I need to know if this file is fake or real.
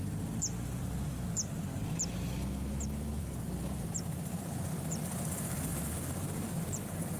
real